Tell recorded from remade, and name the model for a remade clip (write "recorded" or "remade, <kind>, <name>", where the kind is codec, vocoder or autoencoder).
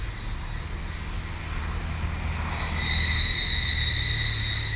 recorded